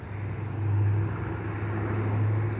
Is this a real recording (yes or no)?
yes